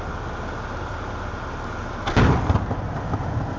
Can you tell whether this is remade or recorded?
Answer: recorded